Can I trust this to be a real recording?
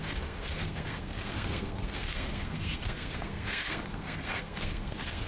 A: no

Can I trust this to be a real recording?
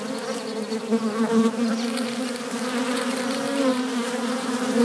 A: yes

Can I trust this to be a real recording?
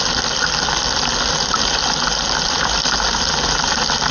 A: yes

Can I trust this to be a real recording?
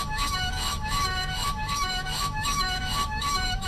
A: no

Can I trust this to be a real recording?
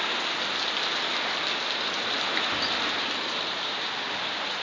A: yes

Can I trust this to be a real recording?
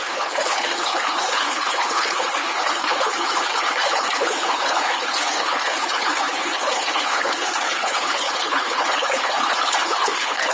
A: no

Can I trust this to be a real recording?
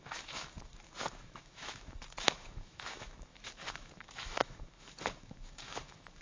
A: no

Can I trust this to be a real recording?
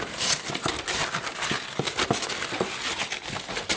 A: yes